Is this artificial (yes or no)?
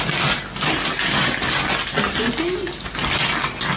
no